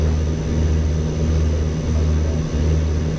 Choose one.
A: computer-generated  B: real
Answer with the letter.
B